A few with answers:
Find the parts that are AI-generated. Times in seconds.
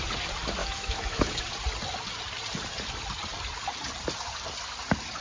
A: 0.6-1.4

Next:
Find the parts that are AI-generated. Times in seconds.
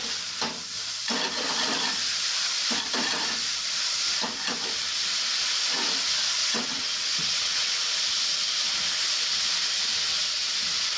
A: 6.4-7.8